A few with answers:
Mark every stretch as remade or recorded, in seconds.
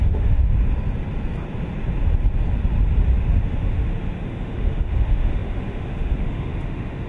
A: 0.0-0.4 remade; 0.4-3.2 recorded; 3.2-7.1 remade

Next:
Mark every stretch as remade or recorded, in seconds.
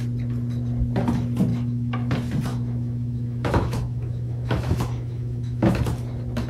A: 0.0-1.5 recorded; 1.5-2.1 remade; 2.1-2.5 recorded; 2.5-5.8 remade; 5.8-6.5 recorded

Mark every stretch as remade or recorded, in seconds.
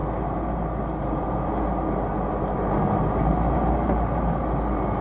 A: 0.0-5.0 recorded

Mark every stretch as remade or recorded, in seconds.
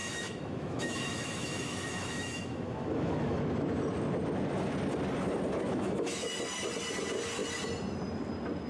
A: 0.0-3.4 remade; 3.4-5.7 recorded; 5.7-6.3 remade; 6.3-8.7 recorded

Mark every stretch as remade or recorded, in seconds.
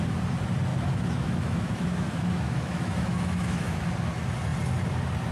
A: 0.0-0.7 recorded; 0.7-3.9 remade; 3.9-5.3 recorded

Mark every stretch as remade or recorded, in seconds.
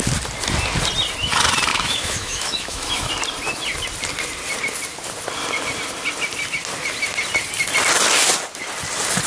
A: 0.0-1.7 recorded; 1.7-3.1 remade; 3.1-9.3 recorded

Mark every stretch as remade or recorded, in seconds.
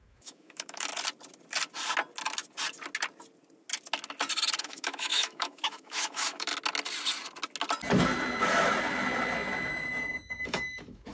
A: 0.0-0.9 remade; 0.9-4.6 recorded; 4.6-6.5 remade; 6.5-9.7 recorded; 9.7-11.1 remade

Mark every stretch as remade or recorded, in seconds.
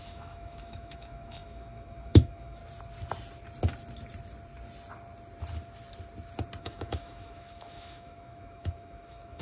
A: 0.0-2.6 remade; 2.6-6.6 recorded; 6.6-9.4 remade